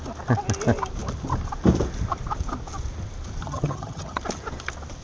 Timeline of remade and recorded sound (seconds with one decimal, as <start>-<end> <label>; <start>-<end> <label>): 0.0-3.4 recorded; 3.4-4.2 remade; 4.2-5.0 recorded